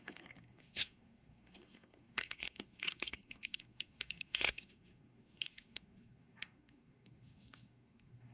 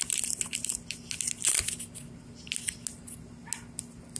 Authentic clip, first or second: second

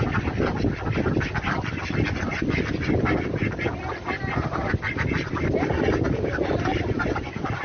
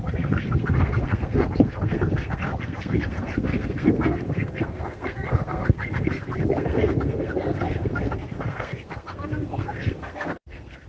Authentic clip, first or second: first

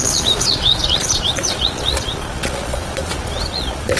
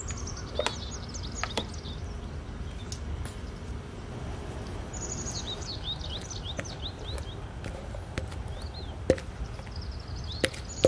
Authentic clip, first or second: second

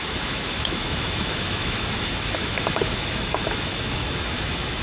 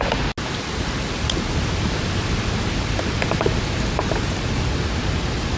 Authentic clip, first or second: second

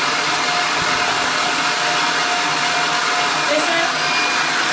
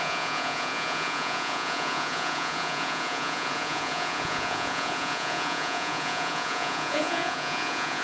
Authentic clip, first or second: first